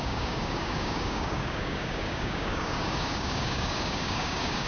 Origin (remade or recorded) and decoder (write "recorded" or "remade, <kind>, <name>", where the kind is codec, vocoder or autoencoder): remade, codec, DAC